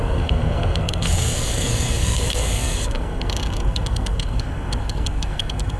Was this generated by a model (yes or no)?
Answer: yes